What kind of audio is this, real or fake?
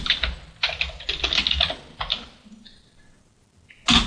real